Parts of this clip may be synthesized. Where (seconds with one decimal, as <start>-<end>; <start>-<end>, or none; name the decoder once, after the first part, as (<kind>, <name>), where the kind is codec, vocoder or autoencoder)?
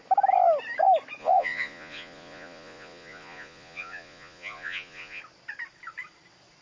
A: 1.2-5.2 (vocoder, Vocos)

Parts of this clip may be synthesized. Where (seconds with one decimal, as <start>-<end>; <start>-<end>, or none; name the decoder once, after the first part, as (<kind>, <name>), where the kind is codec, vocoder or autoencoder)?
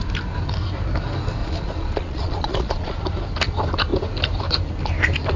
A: 1.4-3.0 (vocoder, Vocos)